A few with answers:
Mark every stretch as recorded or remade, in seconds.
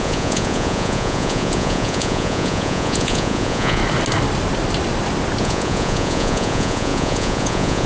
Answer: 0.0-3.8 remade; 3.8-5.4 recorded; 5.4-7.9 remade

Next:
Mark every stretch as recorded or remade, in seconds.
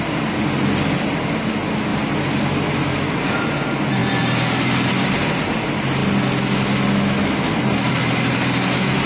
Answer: 0.0-9.1 recorded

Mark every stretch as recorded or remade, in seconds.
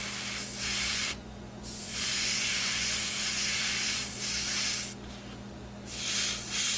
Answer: 0.0-0.9 recorded; 0.9-4.0 remade; 4.0-6.8 recorded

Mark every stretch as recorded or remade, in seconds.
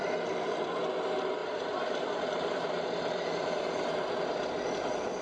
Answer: 0.0-1.4 recorded; 1.4-4.5 remade; 4.5-5.2 recorded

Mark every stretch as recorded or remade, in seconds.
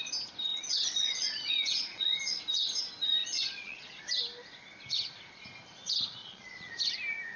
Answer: 0.0-0.5 recorded; 0.5-2.4 remade; 2.4-3.2 recorded; 3.2-4.0 remade; 4.0-6.2 recorded; 6.2-6.7 remade; 6.7-7.4 recorded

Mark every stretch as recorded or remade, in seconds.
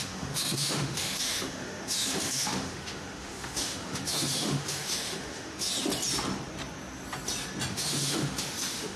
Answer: 0.0-5.7 remade; 5.7-7.7 recorded; 7.7-9.0 remade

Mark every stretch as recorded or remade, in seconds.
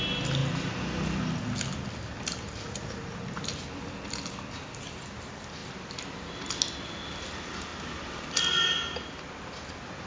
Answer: 0.0-5.6 recorded; 5.6-6.3 remade; 6.3-7.7 recorded; 7.7-8.3 remade; 8.3-10.1 recorded